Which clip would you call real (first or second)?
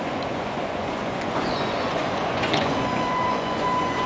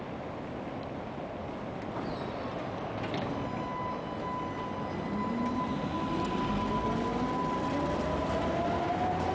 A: second